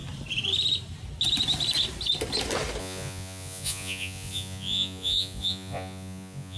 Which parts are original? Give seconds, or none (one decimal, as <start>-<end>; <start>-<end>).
0.0-2.8